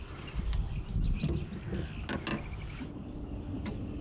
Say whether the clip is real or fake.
real